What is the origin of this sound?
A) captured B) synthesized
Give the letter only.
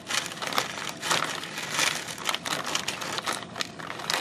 A